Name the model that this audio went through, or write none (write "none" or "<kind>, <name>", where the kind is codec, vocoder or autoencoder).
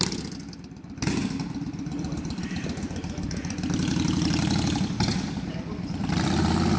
vocoder, BigVGAN v2